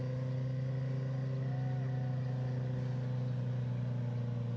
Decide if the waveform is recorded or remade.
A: recorded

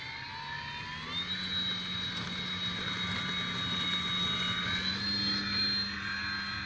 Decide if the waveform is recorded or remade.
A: recorded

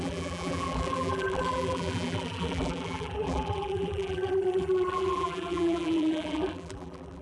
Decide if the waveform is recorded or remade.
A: remade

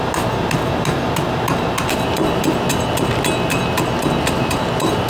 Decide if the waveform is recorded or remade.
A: recorded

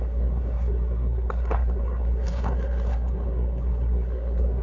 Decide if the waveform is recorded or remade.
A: remade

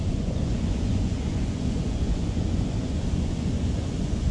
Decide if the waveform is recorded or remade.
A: remade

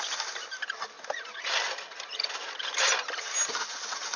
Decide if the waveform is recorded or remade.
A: recorded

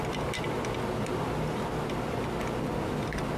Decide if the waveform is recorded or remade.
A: recorded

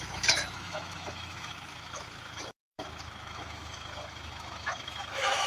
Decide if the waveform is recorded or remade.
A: remade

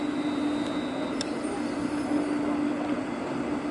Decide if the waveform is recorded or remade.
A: recorded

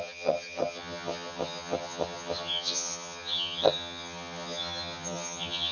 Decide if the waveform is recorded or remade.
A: remade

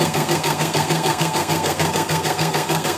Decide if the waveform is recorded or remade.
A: remade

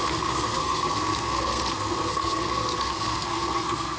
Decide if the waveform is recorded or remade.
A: remade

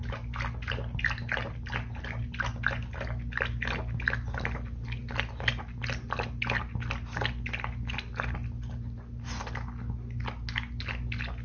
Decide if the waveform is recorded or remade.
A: recorded